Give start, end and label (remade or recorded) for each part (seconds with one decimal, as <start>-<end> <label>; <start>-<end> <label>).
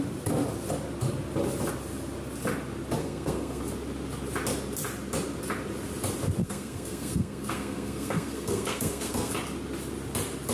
0.0-3.0 recorded; 3.0-3.6 remade; 3.6-6.4 recorded; 6.4-9.3 remade; 9.3-10.5 recorded